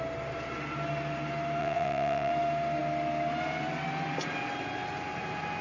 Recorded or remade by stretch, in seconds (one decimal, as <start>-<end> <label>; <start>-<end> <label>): 0.0-1.6 recorded; 1.6-2.3 remade; 2.3-5.6 recorded